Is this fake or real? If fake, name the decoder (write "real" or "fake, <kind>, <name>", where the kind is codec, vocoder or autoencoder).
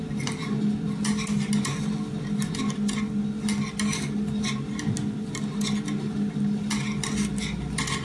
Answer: real